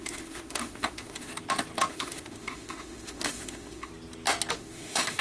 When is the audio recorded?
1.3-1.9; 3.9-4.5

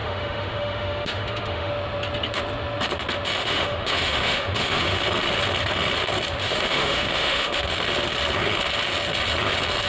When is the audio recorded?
1.7-3.4; 5.0-6.4; 7.6-9.9

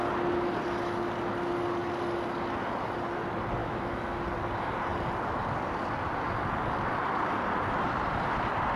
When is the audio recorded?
0.0-3.6; 4.2-8.8

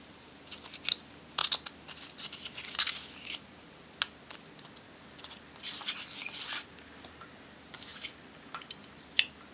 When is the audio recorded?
0.0-9.5

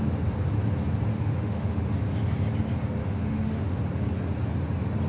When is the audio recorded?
0.0-1.1; 1.9-3.0; 3.8-5.1